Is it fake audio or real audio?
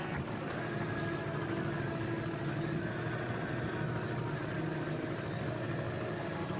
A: real